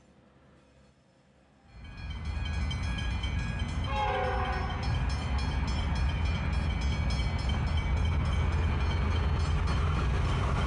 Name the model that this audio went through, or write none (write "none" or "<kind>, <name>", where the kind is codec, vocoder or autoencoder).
none